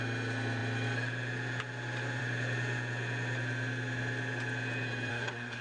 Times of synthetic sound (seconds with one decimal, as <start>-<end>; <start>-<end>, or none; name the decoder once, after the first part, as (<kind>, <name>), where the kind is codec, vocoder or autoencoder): 5.1-5.6 (codec, SNAC)